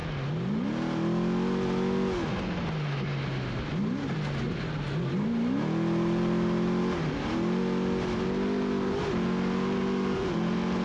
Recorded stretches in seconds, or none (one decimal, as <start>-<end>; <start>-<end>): 0.0-10.8